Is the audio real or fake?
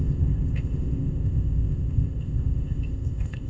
fake